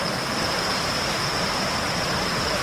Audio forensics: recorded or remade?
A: recorded